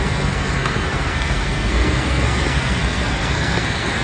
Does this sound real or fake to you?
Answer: fake